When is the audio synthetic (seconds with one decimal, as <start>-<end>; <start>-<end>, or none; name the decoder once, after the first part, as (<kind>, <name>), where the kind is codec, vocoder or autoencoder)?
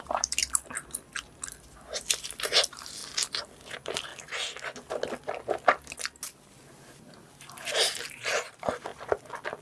0.0-0.4 (vocoder, BigVGAN v2); 2.2-3.0; 3.6-4.1; 7.3-8.9